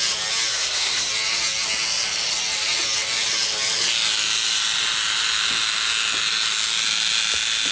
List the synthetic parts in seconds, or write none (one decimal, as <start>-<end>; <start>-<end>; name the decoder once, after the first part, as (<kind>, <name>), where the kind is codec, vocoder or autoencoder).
0.5-1.1 (codec, SNAC)